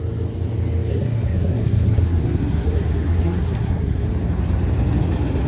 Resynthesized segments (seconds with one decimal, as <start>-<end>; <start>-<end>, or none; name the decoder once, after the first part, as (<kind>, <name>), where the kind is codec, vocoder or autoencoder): 0.9-4.1 (codec, SNAC)